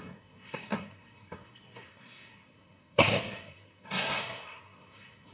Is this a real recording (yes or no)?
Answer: no